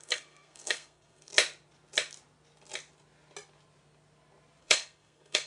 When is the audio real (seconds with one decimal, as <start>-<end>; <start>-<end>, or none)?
1.3-4.6

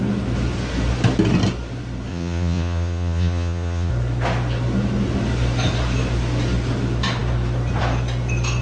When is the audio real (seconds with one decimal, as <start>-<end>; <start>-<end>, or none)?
0.0-2.1; 3.9-8.6

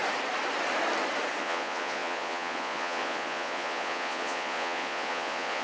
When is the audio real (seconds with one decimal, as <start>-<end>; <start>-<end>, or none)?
0.0-1.4

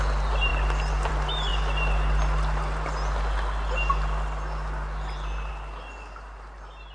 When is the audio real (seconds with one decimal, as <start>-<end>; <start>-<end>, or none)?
0.0-6.9